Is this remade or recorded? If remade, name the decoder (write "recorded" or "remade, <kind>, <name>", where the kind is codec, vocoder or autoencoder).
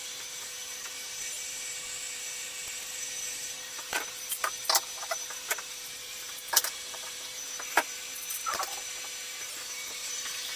remade, vocoder, BigVGAN v2